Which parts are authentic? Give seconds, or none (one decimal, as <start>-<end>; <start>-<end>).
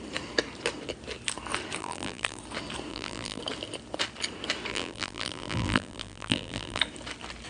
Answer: 0.0-1.8; 2.4-2.9; 3.4-4.7; 6.8-7.5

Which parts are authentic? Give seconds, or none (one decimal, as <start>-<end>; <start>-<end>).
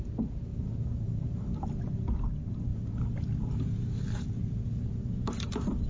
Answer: 0.0-0.5; 1.5-2.7